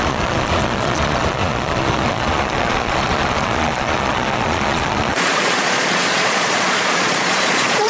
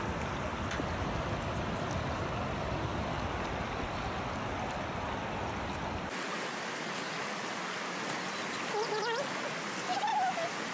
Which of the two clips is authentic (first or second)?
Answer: second